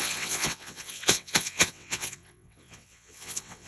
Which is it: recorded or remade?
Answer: remade